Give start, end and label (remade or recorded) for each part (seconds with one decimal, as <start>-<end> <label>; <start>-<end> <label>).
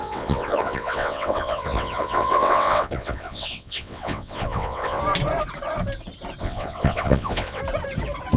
0.0-5.0 remade; 5.0-6.4 recorded; 6.4-7.6 remade; 7.6-8.4 recorded